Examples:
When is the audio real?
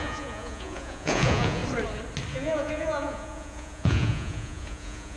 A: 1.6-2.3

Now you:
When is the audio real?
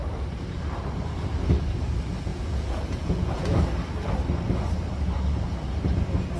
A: 0.0-2.3; 3.6-6.4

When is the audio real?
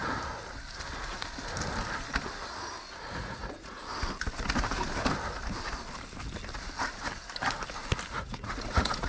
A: 0.0-3.2; 3.8-8.1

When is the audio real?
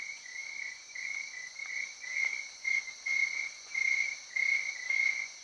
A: 3.8-4.9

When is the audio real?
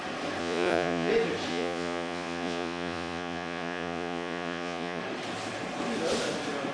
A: 0.0-0.4; 1.1-1.5; 5.0-6.7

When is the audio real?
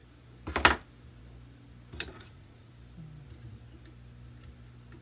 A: 0.0-2.1; 2.7-5.0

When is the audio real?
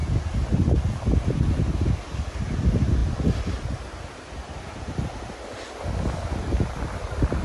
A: 0.0-7.4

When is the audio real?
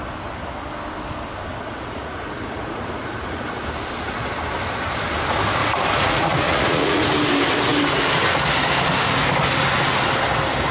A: 0.0-1.5; 3.6-5.6; 7.0-10.7